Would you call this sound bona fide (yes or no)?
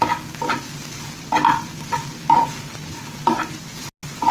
yes